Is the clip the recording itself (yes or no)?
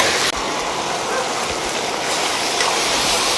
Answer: yes